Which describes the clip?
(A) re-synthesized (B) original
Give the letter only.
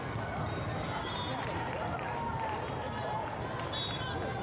B